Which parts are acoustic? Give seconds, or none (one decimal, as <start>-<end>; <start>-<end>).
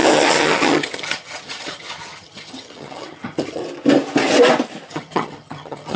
3.6-4.9